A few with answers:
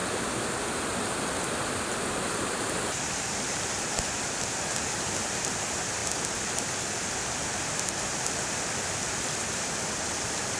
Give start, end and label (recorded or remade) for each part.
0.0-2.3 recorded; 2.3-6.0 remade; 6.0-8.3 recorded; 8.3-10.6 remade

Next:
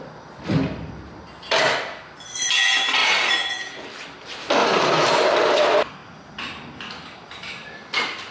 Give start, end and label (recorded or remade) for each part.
0.0-3.0 recorded; 3.0-3.5 remade; 3.5-4.6 recorded; 4.6-5.6 remade; 5.6-8.3 recorded

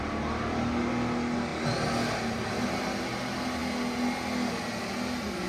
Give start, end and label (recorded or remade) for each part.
0.0-5.5 recorded

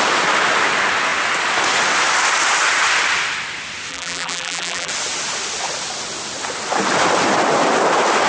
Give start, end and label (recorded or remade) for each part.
0.0-3.9 recorded; 3.9-4.9 remade; 4.9-8.3 recorded

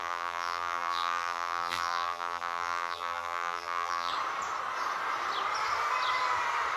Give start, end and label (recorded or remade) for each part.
0.0-4.1 remade; 4.1-6.8 recorded